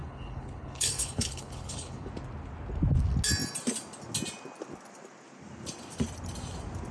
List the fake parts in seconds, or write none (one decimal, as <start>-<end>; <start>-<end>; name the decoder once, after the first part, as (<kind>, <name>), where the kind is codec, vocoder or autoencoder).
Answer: 0.0-2.1 (codec, HILCodec)